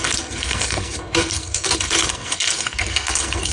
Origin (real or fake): fake